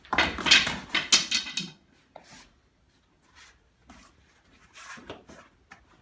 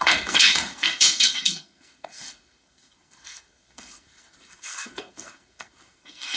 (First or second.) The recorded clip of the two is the first